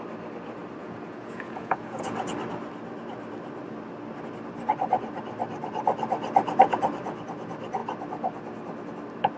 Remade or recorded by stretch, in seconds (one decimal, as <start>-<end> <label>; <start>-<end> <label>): 0.0-0.8 recorded; 0.8-2.3 remade; 2.3-9.4 recorded